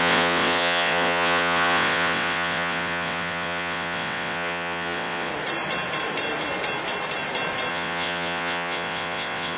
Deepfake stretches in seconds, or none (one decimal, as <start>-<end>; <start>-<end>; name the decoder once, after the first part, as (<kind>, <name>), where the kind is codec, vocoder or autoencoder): 0.0-5.3 (vocoder, WaveNeXt); 7.7-9.6

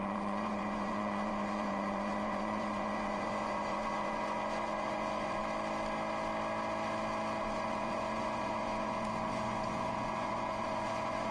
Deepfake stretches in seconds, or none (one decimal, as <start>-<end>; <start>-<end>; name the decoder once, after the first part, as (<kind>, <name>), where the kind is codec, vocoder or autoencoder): 0.0-5.4 (vocoder, Vocos); 7.4-11.3

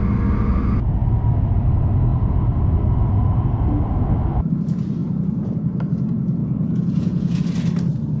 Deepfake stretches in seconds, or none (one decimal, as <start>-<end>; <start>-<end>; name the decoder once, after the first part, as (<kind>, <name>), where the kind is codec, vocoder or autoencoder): 5.0-5.8 (vocoder, Vocos); 6.4-7.4

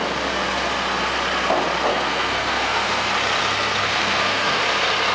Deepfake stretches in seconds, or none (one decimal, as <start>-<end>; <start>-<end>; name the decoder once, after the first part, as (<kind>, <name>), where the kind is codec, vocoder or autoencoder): 1.9-3.1 (codec, SNAC); 3.8-4.6

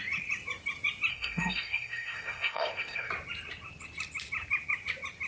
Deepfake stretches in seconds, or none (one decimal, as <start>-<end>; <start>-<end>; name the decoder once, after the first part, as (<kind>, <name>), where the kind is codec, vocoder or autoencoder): 1.1-3.1 (codec, SNAC)

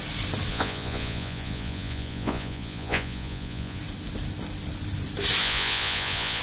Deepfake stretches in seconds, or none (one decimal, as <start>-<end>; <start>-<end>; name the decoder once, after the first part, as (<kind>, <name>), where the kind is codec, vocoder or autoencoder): 0.5-3.8 (vocoder, Vocos); 5.4-6.4